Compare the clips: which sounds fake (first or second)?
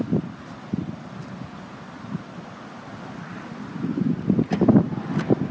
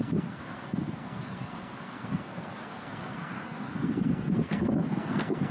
second